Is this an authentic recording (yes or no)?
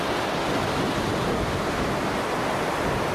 yes